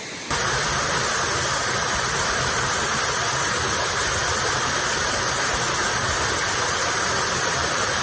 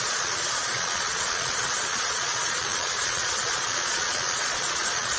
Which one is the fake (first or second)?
second